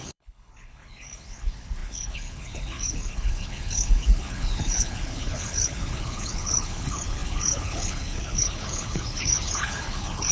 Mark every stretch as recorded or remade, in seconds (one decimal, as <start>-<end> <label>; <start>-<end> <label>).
0.0-10.3 remade